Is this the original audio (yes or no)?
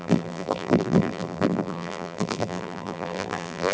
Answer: no